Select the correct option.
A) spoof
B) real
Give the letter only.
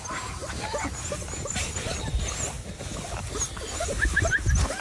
B